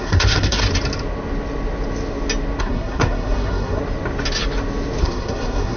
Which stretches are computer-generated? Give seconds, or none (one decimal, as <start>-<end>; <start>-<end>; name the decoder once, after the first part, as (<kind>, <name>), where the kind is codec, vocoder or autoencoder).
0.0-0.6 (codec, SNAC); 2.6-3.8; 5.0-5.8